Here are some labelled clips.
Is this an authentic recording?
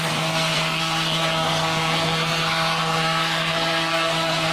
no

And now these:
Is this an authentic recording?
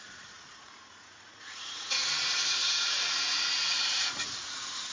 no